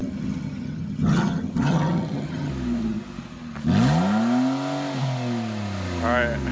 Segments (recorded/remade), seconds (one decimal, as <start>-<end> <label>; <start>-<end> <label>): 0.0-2.5 remade; 2.5-6.5 recorded